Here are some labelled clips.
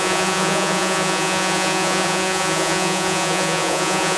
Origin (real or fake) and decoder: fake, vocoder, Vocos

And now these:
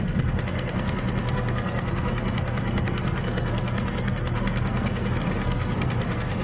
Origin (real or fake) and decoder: fake, codec, SNAC